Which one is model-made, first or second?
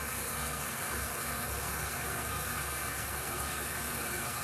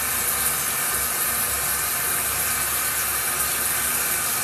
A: first